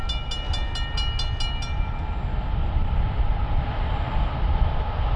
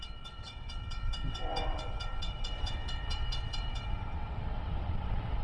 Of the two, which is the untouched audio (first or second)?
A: first